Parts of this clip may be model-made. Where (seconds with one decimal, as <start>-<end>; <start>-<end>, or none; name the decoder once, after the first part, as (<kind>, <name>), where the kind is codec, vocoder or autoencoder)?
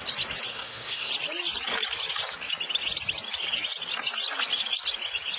0.5-1.1 (codec, SNAC)